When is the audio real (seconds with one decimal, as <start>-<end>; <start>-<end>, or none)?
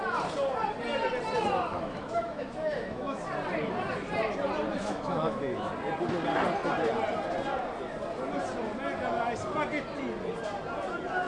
0.0-1.7; 3.2-4.7; 5.7-11.3